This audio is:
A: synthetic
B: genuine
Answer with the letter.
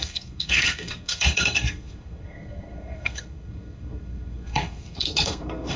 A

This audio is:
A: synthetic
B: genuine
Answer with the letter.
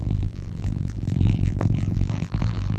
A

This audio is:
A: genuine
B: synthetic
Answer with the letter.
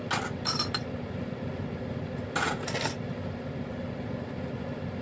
A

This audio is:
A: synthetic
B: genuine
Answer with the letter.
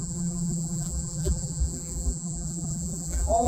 A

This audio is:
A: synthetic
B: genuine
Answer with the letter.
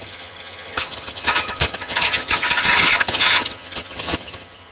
A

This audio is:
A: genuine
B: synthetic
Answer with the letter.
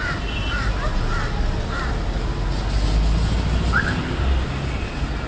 A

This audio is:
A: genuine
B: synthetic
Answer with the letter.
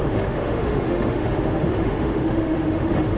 B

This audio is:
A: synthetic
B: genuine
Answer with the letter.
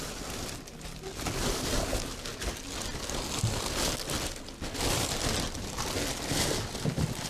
B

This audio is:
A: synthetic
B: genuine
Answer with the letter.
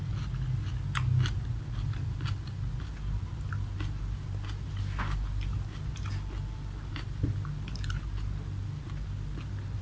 B